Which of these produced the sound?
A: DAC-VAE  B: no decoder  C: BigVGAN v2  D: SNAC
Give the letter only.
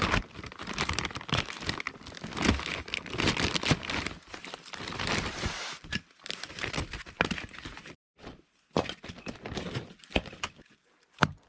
C